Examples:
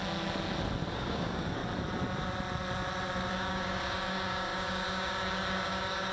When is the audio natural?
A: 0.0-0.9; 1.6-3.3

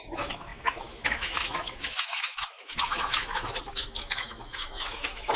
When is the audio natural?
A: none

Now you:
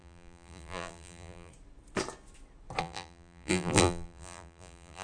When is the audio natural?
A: 1.5-2.8

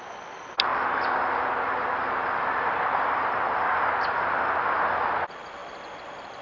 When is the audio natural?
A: 0.0-6.4

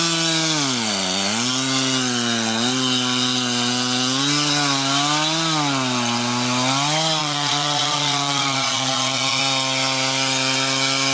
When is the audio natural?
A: 0.0-7.2; 9.4-11.1